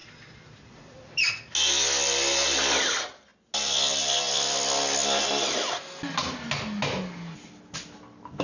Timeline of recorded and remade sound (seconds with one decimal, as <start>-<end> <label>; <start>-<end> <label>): 0.0-1.3 remade; 1.3-8.4 recorded